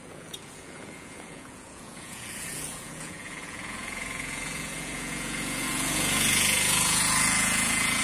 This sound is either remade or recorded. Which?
remade